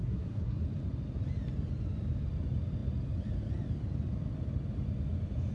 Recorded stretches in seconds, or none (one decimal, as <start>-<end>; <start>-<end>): 0.6-5.5